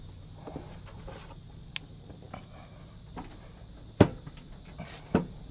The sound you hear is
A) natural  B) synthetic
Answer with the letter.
A